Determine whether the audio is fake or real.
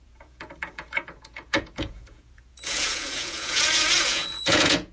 fake